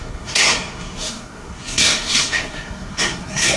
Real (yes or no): no